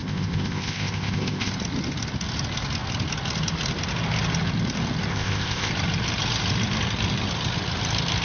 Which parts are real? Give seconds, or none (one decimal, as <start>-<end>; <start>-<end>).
1.5-5.1; 5.7-8.2